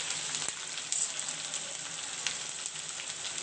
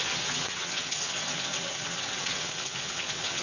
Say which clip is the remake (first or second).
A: second